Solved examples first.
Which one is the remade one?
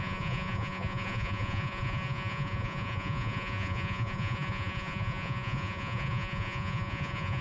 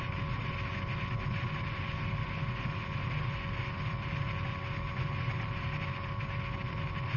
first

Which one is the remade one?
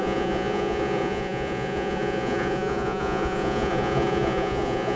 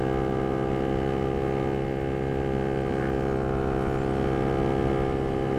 first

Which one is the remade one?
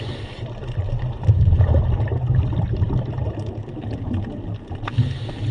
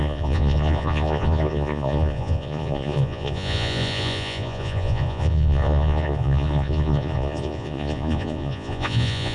second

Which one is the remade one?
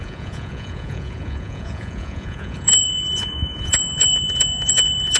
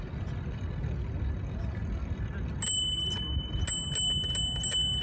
first